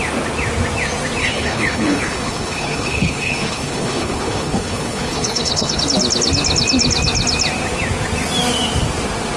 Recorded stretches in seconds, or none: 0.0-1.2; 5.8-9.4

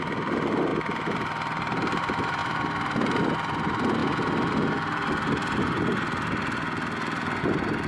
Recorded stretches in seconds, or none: 0.7-2.0; 4.0-7.4

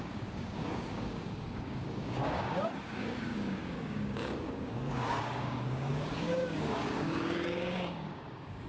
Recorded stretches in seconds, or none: none

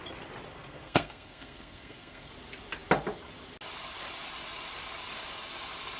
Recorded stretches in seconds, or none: 0.0-0.5; 2.3-6.0

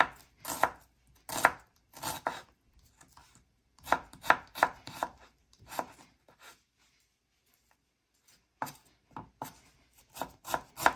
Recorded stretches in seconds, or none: 0.0-3.2; 7.2-11.0